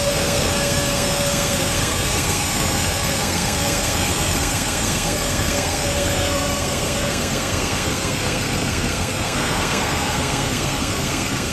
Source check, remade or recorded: remade